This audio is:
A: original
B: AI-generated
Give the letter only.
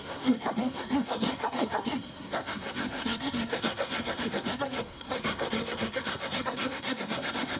B